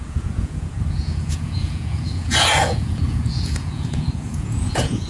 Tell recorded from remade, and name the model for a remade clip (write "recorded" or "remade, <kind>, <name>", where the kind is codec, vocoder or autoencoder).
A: remade, vocoder, Vocos